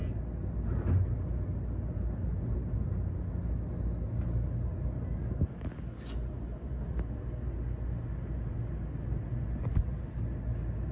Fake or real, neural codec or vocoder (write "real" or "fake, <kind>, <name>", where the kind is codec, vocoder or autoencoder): real